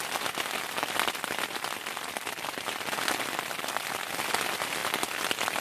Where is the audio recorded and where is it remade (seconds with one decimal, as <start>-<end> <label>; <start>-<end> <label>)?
0.0-5.6 recorded